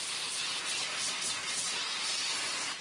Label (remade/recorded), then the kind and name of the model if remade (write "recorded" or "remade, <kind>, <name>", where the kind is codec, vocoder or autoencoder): remade, vocoder, BigVGAN v2